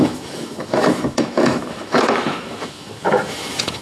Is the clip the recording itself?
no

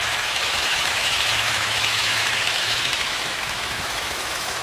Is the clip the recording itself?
no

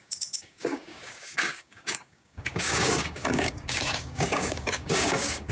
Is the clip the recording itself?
no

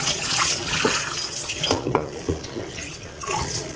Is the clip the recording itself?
no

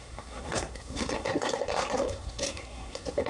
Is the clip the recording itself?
no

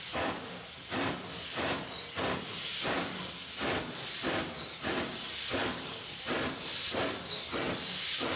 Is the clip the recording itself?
yes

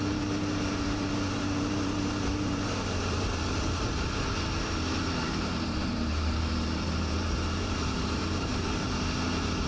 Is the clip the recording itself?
no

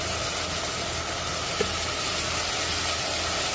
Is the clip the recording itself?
yes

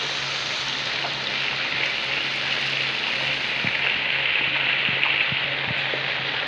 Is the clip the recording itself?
yes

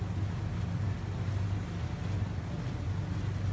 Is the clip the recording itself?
yes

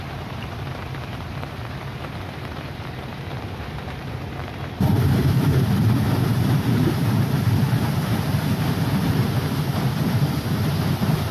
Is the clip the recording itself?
no